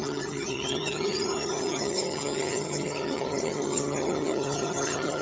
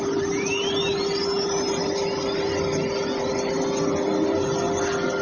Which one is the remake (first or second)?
first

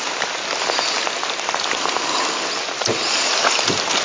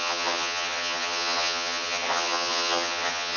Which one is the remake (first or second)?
second